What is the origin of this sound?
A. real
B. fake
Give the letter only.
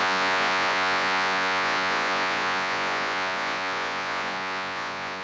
B